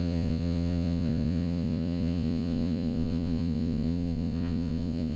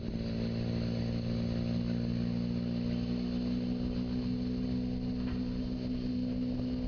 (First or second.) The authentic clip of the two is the second